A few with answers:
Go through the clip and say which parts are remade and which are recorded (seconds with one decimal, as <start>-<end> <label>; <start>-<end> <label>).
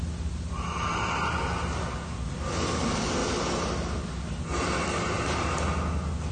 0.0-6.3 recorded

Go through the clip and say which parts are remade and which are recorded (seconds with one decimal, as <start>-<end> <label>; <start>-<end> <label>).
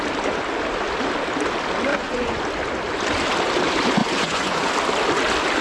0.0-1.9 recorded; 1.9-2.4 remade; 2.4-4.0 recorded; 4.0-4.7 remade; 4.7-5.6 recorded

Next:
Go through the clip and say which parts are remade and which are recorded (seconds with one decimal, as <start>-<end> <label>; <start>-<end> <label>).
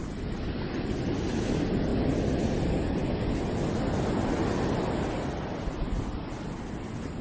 0.0-7.2 recorded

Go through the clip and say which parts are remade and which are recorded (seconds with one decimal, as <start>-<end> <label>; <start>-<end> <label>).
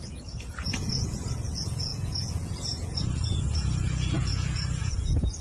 0.0-5.4 remade